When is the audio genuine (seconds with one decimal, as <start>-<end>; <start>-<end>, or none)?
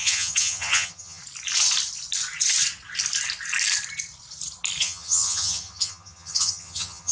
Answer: 1.2-4.8